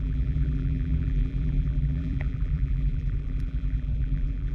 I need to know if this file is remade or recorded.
remade